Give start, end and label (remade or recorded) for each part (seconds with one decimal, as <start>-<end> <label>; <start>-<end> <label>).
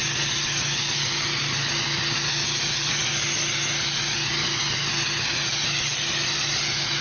0.0-7.0 recorded